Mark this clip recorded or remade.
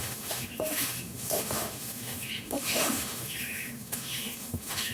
remade